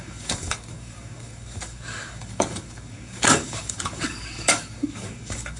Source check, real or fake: fake